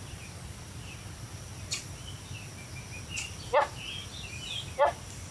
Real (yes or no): yes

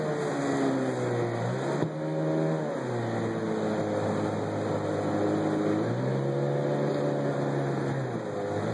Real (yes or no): yes